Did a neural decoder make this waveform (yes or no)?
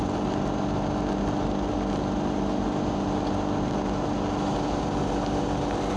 no